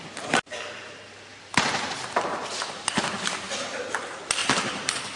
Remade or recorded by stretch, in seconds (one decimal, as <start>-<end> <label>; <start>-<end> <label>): 0.0-2.4 recorded; 2.4-3.0 remade; 3.0-4.4 recorded; 4.4-5.2 remade